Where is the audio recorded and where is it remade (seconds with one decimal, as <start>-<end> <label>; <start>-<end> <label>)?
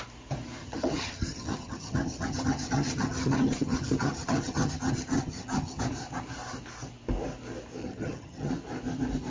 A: 0.0-0.6 recorded; 0.6-5.8 remade; 5.8-7.8 recorded; 7.8-8.5 remade; 8.5-9.3 recorded